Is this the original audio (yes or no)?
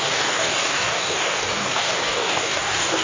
no